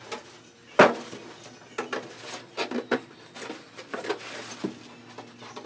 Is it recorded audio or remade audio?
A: recorded